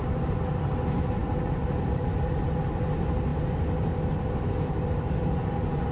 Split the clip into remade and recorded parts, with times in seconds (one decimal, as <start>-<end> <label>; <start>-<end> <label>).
0.0-5.9 recorded